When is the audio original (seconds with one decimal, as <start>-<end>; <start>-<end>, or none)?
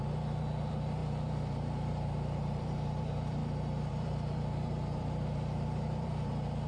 3.4-3.9